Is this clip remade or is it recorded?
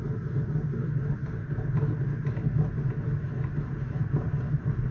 recorded